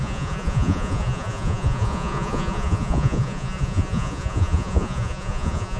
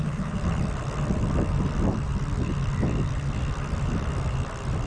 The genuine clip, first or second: second